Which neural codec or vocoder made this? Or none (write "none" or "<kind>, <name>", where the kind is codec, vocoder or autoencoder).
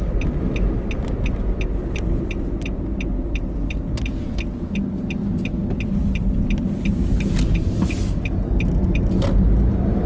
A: none